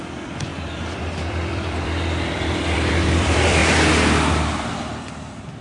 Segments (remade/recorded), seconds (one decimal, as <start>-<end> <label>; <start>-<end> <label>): 0.0-3.6 remade; 3.6-4.3 recorded; 4.3-5.6 remade